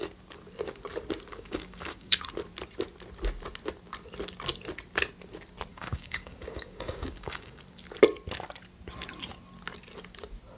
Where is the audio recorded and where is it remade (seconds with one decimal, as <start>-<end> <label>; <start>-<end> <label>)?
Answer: 0.0-1.3 recorded; 1.3-2.2 remade; 2.2-5.7 recorded; 5.7-7.6 remade; 7.6-10.6 recorded